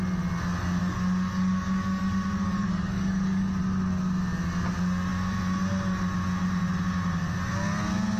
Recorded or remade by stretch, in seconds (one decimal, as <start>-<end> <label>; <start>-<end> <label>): 0.0-0.8 recorded; 0.8-3.6 remade; 3.6-8.2 recorded